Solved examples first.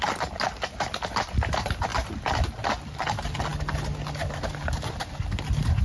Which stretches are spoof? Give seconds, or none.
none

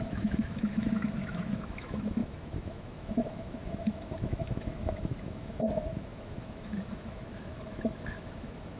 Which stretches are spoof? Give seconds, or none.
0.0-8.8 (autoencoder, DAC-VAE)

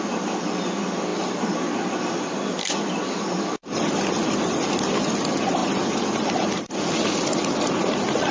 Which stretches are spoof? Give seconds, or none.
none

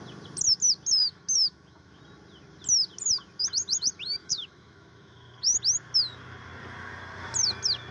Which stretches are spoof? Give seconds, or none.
1.0-2.0 (autoencoder, DAC-VAE); 4.2-5.6